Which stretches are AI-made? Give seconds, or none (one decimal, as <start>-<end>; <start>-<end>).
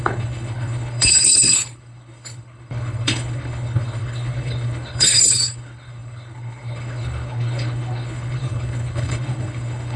0.0-10.0